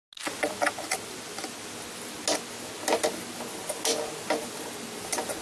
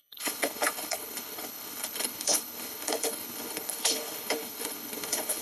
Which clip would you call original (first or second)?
first